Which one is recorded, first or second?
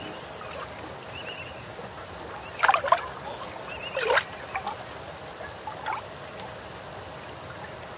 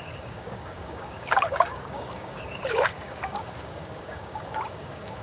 first